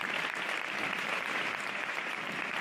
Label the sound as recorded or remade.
remade